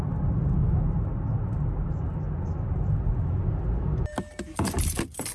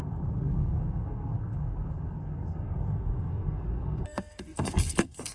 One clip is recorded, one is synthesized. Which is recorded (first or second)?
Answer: first